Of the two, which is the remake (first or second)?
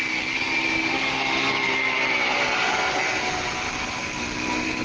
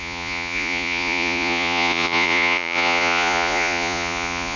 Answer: second